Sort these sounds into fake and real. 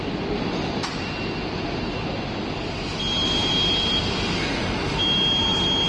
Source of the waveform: real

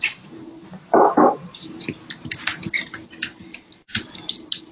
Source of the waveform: fake